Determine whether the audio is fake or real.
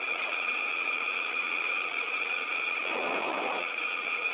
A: fake